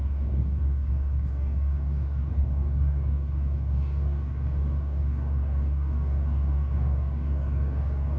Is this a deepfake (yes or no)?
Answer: yes